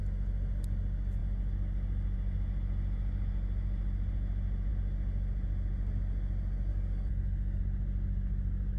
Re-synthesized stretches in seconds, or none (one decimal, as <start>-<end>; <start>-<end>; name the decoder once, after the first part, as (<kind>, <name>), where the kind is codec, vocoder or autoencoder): 6.7-7.6 (codec, DAC)